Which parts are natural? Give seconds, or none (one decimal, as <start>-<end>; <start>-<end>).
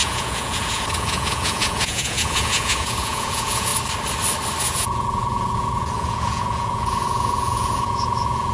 3.7-4.6